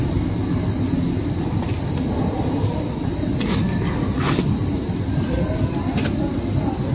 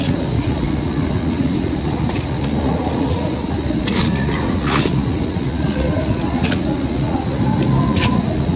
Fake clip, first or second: second